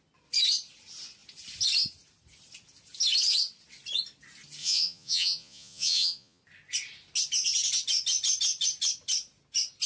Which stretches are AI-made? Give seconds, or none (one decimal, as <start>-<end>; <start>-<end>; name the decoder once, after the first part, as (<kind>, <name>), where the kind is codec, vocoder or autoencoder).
4.6-6.4 (vocoder, Vocos)